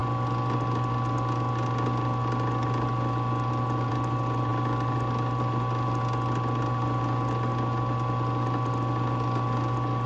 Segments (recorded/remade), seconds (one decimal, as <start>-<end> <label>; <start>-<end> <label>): 0.0-10.1 recorded